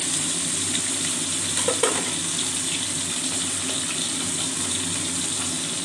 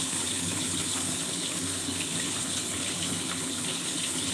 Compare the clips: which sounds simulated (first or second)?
second